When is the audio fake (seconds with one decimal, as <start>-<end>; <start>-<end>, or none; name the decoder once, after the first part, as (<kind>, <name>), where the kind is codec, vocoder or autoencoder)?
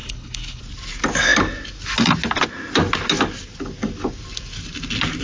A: 0.0-0.6 (codec, HILCodec)